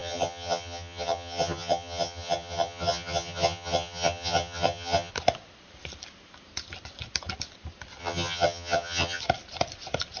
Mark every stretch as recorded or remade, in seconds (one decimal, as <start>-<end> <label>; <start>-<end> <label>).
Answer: 0.0-5.1 remade; 5.1-8.0 recorded; 8.0-9.2 remade; 9.2-10.2 recorded